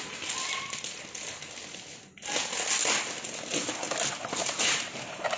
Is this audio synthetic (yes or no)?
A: no